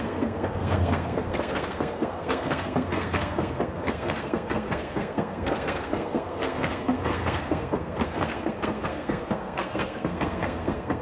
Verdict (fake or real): fake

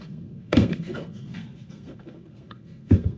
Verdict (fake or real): fake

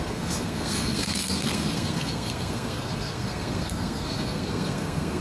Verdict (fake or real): fake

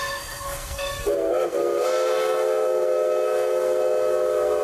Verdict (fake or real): fake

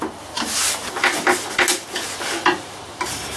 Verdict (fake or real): real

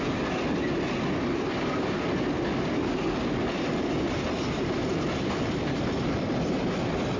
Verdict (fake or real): real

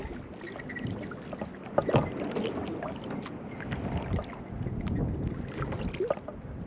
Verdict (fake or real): real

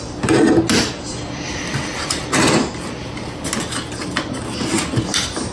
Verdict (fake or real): real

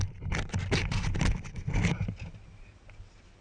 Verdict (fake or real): real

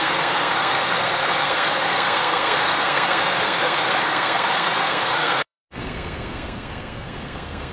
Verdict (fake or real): fake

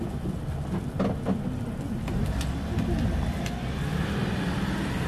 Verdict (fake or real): real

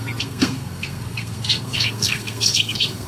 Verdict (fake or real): fake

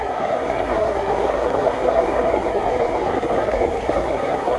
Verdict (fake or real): fake